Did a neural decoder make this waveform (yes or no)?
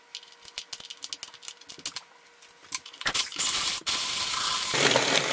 no